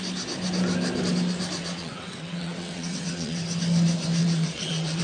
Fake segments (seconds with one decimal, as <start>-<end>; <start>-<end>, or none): 1.6-3.4; 4.2-5.0